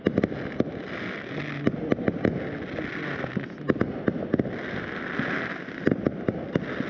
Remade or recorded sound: recorded